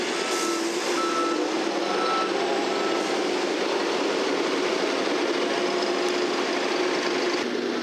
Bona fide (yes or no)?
yes